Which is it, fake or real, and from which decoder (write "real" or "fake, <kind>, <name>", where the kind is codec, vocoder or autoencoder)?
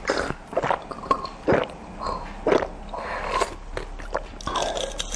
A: real